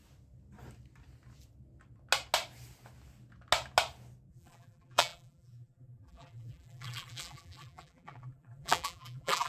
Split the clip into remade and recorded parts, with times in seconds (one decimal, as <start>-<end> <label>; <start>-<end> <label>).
0.0-4.3 recorded; 4.3-9.5 remade

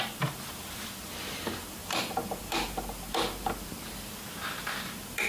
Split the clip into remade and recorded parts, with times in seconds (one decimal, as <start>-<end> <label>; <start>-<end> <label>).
0.0-5.3 remade

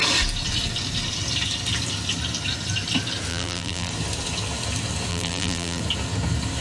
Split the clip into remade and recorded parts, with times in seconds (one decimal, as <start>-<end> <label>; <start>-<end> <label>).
0.0-3.3 recorded; 3.3-3.9 remade; 3.9-5.1 recorded; 5.1-5.8 remade; 5.8-6.6 recorded